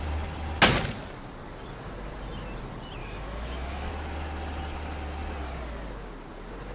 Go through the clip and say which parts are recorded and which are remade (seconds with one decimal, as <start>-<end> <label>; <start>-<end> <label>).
0.0-3.0 recorded; 3.0-3.9 remade; 3.9-6.7 recorded